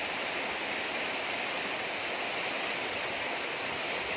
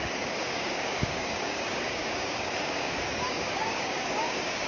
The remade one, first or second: second